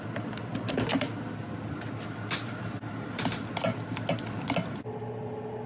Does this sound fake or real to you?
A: real